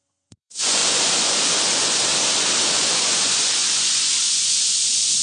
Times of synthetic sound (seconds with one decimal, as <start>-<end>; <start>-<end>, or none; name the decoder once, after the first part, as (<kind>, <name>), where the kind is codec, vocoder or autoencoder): 0.0-2.1 (vocoder, Vocos); 2.7-5.2